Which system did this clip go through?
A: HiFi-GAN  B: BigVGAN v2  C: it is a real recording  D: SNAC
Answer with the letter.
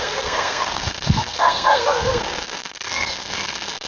D